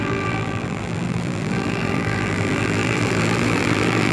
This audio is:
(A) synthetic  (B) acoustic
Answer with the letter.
A